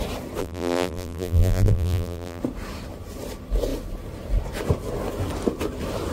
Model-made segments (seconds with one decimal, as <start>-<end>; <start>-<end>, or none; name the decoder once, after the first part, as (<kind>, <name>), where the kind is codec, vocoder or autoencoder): 0.4-2.4 (vocoder, BigVGAN v2)